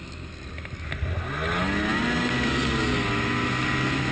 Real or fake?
real